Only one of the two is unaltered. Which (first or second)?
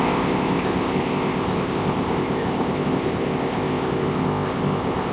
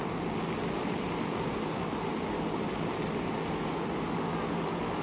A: second